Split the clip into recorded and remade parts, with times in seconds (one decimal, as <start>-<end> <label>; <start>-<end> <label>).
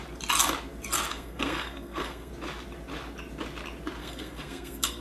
0.0-1.1 recorded; 1.1-2.3 remade; 2.3-4.0 recorded; 4.0-5.0 remade